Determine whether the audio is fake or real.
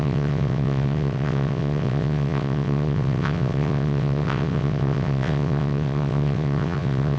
fake